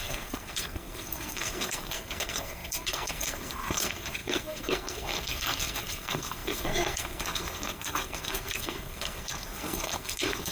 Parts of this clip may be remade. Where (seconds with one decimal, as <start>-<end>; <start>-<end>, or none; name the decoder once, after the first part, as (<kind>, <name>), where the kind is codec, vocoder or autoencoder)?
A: 0.0-10.5 (codec, SNAC)